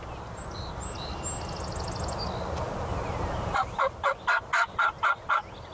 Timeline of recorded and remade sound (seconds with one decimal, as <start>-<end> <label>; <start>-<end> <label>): 0.0-1.1 remade; 1.1-2.9 recorded; 2.9-3.6 remade; 3.6-5.7 recorded